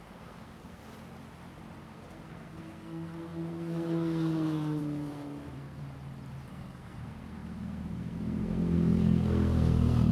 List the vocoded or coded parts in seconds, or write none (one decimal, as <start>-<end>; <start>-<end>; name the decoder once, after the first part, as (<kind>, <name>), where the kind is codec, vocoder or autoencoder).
0.0-0.8 (codec, SNAC); 1.8-5.8; 6.5-10.1